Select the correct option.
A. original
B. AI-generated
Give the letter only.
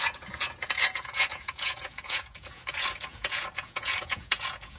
B